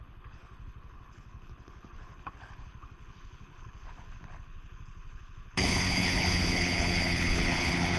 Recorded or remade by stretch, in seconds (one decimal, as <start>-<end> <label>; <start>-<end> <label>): 0.0-8.0 remade